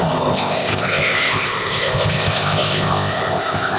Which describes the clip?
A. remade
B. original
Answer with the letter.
A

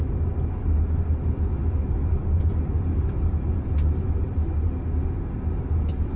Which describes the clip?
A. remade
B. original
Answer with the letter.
B